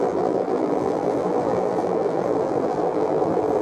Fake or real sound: fake